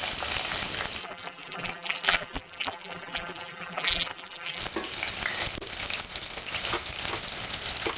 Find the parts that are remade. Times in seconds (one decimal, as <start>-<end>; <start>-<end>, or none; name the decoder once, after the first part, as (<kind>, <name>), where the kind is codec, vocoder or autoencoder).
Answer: 1.0-4.6 (vocoder, BigVGAN v2)

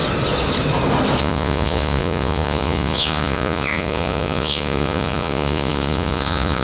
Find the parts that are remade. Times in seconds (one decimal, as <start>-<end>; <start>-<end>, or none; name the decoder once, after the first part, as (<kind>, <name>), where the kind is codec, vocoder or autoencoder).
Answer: 1.2-6.6 (vocoder, Vocos)

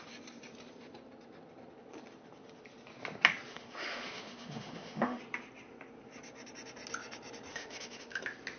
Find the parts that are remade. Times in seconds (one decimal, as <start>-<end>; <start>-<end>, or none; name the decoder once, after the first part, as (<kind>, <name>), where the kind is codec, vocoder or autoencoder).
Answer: 3.5-5.2 (autoencoder, DAC-VAE); 7.5-8.2

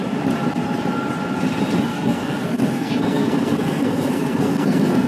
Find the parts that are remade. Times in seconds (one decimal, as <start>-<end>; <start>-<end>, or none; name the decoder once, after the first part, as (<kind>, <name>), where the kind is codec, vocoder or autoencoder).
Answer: 1.9-5.1 (codec, SNAC)